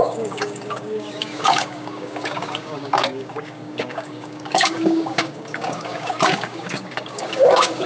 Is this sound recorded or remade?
remade